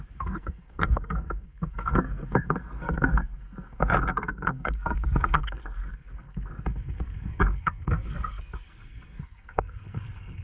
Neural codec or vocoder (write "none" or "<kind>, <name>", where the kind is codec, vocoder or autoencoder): codec, SNAC